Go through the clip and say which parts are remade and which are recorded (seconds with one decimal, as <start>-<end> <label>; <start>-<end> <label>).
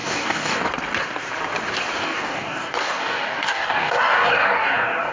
0.0-0.6 remade; 0.6-2.0 recorded; 2.0-5.1 remade